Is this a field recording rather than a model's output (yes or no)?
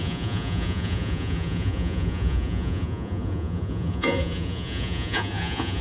no